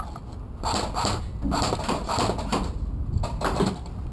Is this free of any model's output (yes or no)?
yes